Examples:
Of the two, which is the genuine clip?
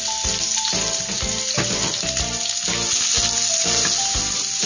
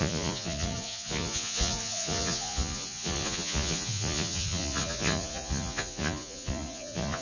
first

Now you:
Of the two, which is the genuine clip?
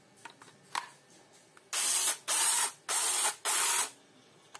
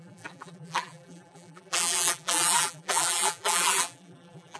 first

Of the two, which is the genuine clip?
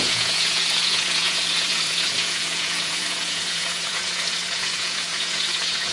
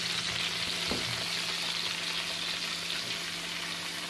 second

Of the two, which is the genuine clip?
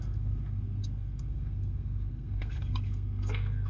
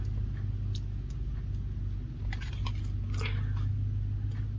second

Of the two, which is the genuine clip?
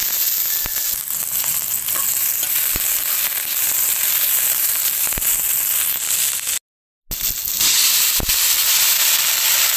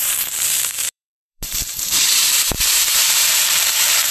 first